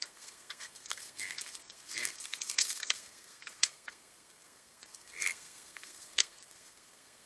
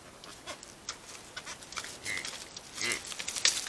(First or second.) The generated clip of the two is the first